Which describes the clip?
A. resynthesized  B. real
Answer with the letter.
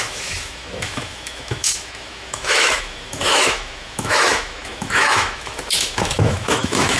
A